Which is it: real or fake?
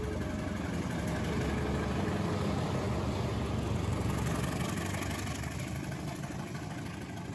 real